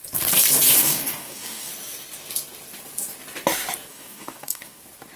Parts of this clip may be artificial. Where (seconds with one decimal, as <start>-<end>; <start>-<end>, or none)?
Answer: 0.8-1.7; 3.9-4.8